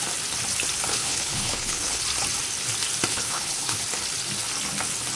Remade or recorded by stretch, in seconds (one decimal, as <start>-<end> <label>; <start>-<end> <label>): 0.0-0.9 recorded; 0.9-2.0 remade; 2.0-3.1 recorded; 3.1-3.8 remade; 3.8-5.2 recorded